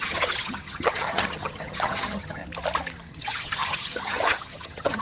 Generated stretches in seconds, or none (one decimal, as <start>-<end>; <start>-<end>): 0.0-2.4; 3.1-5.0